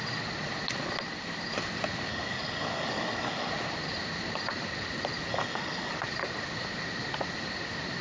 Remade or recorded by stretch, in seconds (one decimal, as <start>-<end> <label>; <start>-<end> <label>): 0.0-2.1 recorded; 2.1-3.5 remade; 3.5-5.3 recorded; 5.3-5.9 remade; 5.9-8.0 recorded